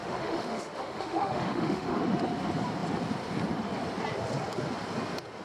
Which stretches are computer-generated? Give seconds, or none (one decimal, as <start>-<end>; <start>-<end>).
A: 0.0-2.0